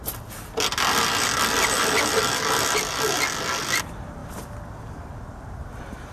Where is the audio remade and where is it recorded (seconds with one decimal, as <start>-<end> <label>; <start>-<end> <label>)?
0.0-6.1 recorded